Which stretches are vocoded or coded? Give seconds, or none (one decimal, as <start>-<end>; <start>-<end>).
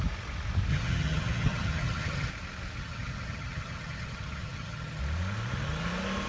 0.7-2.3; 2.8-5.0